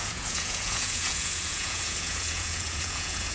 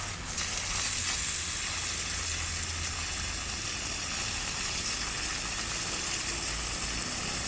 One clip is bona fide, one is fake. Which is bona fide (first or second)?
second